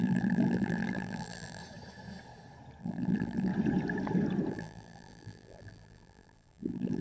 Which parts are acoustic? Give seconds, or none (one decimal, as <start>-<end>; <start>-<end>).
1.6-2.8; 3.5-4.5